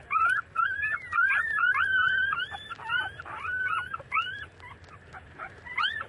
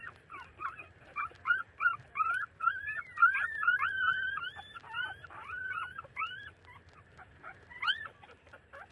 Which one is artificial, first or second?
second